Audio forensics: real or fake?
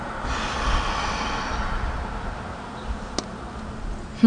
real